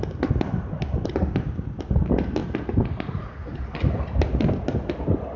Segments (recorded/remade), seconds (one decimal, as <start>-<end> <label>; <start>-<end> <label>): 0.0-5.4 recorded